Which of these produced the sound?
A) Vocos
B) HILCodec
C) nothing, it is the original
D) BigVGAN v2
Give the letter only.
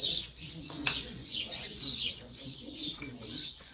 A